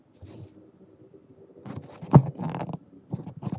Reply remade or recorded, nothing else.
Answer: recorded